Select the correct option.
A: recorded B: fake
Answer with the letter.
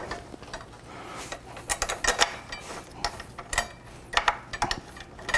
A